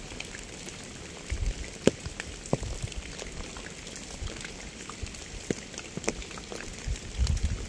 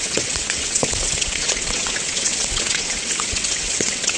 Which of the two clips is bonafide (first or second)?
first